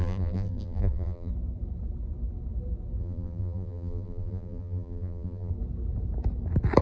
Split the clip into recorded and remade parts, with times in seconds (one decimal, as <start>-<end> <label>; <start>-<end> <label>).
0.0-1.3 remade; 1.3-3.0 recorded; 3.0-5.5 remade; 5.5-6.8 recorded